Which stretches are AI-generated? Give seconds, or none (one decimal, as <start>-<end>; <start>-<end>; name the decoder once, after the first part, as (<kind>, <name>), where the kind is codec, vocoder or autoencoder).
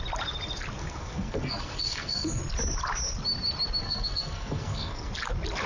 0.8-2.4 (codec, SNAC); 3.8-5.1